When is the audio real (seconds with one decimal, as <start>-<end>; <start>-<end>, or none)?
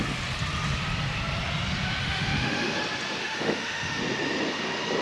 0.0-2.0; 2.8-3.2; 4.0-5.0